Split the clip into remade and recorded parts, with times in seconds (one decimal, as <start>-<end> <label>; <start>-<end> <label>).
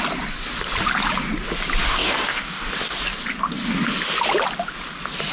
0.0-1.8 recorded; 1.8-2.7 remade; 2.7-5.3 recorded